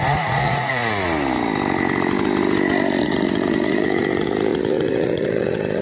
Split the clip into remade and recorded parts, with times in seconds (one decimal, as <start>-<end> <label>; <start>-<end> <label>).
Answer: 0.0-0.8 remade; 0.8-3.0 recorded; 3.0-5.8 remade